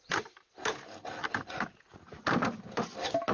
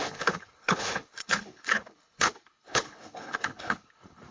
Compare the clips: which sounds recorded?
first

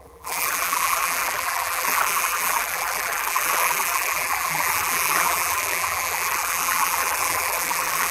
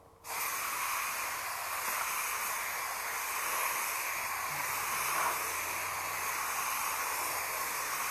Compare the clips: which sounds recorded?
second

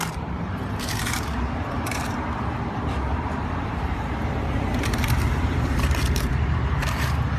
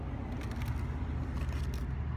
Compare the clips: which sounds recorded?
second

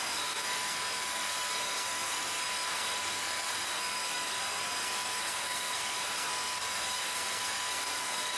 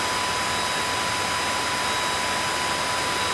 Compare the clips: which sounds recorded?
second